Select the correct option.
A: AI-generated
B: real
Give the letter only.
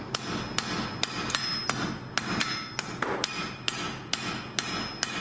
B